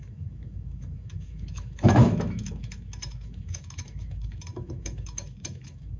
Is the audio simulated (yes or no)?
yes